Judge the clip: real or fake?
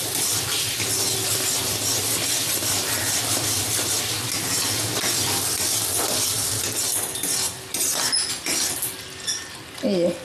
real